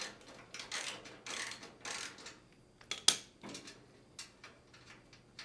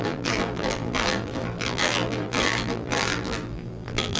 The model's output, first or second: second